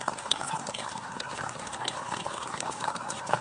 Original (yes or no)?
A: no